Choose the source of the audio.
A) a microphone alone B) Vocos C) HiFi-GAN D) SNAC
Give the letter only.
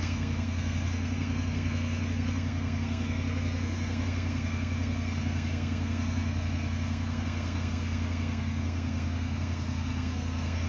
D